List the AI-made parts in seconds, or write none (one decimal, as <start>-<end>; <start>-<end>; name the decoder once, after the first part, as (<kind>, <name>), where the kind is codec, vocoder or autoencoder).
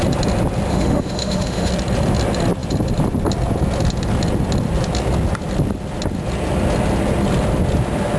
0.7-1.7 (autoencoder, DAC-VAE)